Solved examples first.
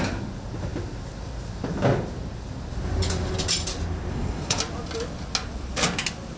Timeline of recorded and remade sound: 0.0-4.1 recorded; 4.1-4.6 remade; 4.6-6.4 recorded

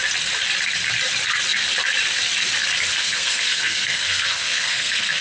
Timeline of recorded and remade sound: 0.0-3.0 recorded; 3.0-5.2 remade

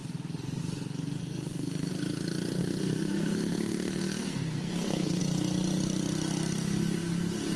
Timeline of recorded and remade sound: 0.0-1.2 recorded; 1.2-1.9 remade; 1.9-2.6 recorded; 2.6-5.2 remade; 5.2-7.6 recorded